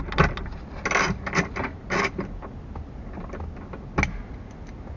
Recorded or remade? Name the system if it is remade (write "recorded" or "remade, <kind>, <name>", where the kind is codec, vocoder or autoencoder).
recorded